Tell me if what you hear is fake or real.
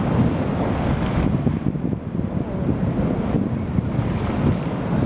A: real